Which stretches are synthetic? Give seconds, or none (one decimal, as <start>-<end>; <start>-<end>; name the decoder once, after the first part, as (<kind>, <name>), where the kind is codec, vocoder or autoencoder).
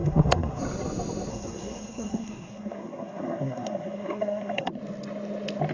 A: 0.0-0.6 (codec, SNAC); 1.3-4.7